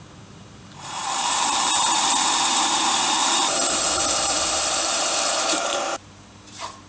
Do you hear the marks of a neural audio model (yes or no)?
yes